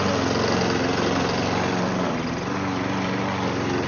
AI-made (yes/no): no